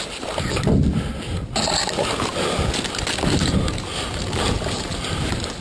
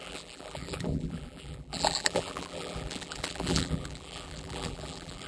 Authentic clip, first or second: first